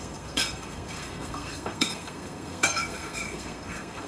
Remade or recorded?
remade